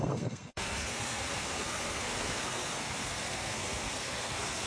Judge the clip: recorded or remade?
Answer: remade